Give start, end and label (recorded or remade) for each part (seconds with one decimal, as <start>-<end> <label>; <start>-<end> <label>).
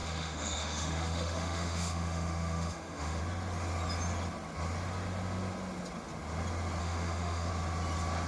0.0-3.2 remade; 3.2-6.8 recorded; 6.8-7.5 remade; 7.5-8.3 recorded